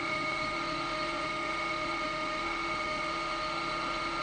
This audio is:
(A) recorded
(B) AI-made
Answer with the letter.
B